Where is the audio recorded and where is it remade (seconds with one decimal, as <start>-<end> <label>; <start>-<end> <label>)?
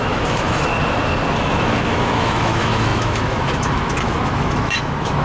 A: 0.0-0.7 remade; 0.7-1.4 recorded; 1.4-5.2 remade